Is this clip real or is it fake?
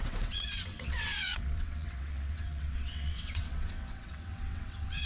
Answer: fake